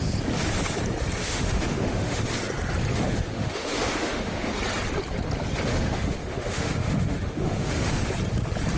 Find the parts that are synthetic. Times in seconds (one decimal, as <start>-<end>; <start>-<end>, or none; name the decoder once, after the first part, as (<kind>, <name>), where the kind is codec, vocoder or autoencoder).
1.2-2.3 (autoencoder, DAC-VAE); 2.9-4.5; 5.7-8.1